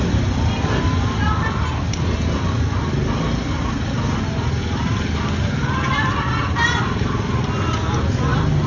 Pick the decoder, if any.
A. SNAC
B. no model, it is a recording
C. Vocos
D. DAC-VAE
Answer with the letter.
B